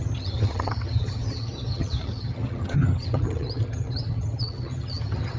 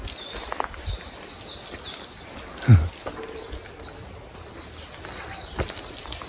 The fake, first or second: first